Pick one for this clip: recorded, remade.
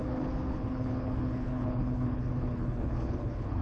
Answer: remade